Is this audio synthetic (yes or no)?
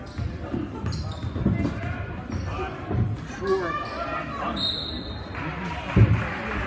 no